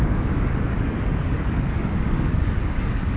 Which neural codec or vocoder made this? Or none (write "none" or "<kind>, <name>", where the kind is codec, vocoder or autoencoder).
codec, DAC